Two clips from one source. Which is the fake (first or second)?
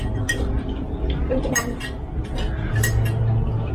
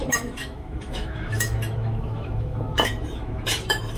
second